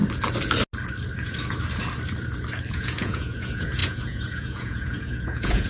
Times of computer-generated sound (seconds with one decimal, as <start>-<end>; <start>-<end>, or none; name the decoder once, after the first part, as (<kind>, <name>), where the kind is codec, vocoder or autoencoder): 2.7-5.7 (vocoder, Vocos)